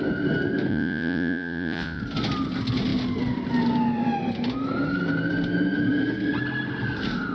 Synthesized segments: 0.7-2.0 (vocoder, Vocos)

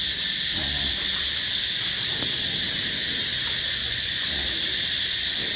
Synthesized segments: 3.8-4.3 (vocoder, Vocos)